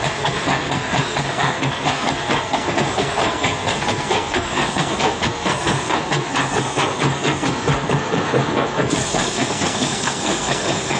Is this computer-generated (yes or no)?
yes